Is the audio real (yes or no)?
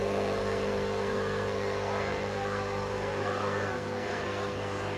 no